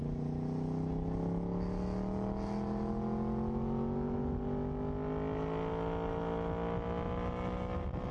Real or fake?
real